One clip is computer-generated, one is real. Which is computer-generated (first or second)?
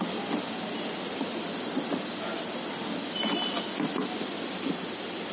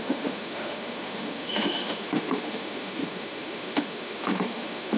second